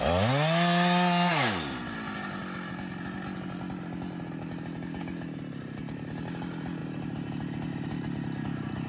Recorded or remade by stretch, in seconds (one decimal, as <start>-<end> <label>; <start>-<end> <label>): 0.0-8.9 recorded